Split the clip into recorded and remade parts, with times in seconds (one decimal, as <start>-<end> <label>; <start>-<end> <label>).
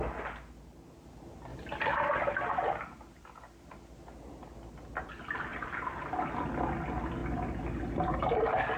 0.0-1.5 recorded; 1.5-2.1 remade; 2.1-5.5 recorded; 5.5-6.4 remade; 6.4-8.8 recorded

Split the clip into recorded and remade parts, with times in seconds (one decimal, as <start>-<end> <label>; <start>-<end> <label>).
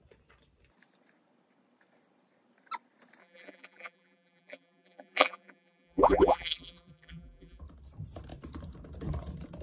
0.0-3.2 recorded; 3.2-7.6 remade; 7.6-9.6 recorded